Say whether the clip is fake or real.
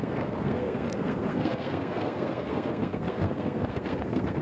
fake